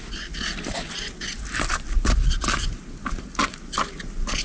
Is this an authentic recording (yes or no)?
yes